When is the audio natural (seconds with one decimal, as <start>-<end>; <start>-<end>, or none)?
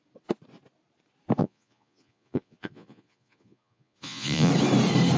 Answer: 0.0-1.4; 4.5-5.2